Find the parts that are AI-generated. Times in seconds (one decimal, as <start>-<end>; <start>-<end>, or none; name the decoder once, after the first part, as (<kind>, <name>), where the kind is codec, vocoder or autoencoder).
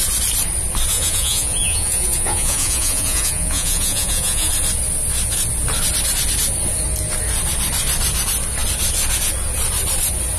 0.9-4.5 (vocoder, Vocos)